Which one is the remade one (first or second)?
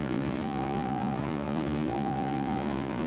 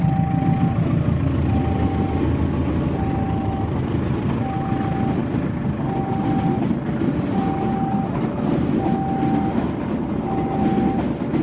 first